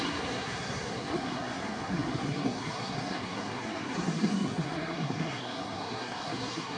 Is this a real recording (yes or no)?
no